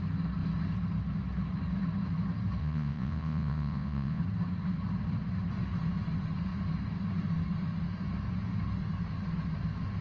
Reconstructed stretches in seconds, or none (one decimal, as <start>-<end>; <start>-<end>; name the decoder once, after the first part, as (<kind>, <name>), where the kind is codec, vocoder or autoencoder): 2.6-4.2 (vocoder, Vocos)